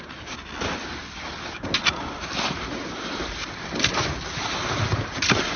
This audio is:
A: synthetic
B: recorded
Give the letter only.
B